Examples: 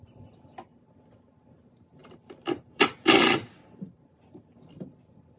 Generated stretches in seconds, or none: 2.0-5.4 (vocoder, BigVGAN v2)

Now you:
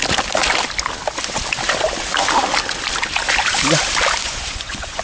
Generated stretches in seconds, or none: 4.2-5.0 (vocoder, Vocos)